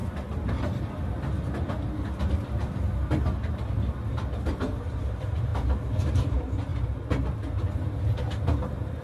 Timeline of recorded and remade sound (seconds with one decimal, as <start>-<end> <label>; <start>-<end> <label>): 0.0-4.4 recorded; 4.4-5.5 remade; 5.5-6.1 recorded; 6.1-6.7 remade; 6.7-8.2 recorded; 8.2-9.0 remade